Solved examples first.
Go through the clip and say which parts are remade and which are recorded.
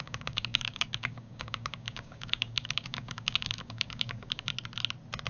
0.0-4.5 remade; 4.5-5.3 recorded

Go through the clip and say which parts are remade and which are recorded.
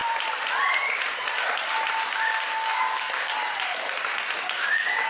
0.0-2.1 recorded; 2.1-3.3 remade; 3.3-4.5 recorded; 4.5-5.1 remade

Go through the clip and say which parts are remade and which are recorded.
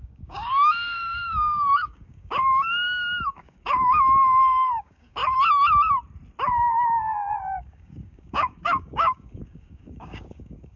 0.0-5.2 remade; 5.2-6.5 recorded; 6.5-10.8 remade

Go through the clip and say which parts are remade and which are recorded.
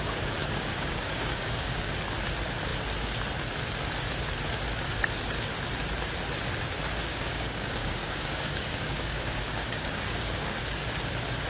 0.0-0.4 recorded; 0.4-2.0 remade; 2.0-7.1 recorded; 7.1-10.6 remade; 10.6-11.5 recorded